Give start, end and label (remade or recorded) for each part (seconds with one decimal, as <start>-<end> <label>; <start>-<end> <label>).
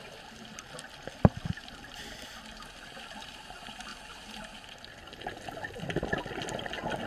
0.0-7.1 recorded